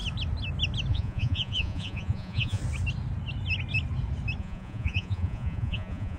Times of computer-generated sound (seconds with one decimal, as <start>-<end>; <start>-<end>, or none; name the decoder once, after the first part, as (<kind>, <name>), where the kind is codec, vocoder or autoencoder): 0.9-2.6 (vocoder, Vocos); 4.4-6.2